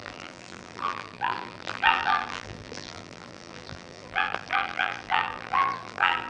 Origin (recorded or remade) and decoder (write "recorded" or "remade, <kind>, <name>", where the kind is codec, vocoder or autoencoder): remade, vocoder, BigVGAN v2